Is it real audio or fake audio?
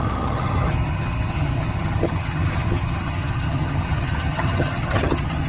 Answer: fake